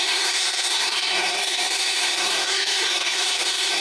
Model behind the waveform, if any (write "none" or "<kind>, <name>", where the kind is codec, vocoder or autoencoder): codec, SNAC